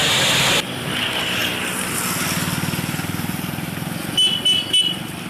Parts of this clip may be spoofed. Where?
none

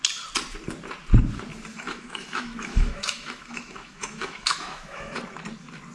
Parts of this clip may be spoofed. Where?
1.7-5.2 (autoencoder, DAC-VAE)

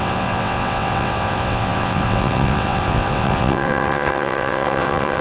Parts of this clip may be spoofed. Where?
0.0-5.2 (vocoder, WaveNeXt)

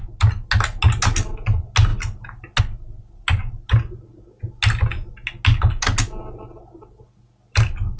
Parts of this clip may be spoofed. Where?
none